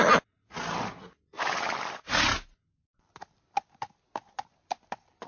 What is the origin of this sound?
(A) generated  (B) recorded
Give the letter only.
B